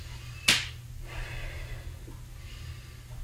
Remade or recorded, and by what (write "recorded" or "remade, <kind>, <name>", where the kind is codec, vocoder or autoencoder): recorded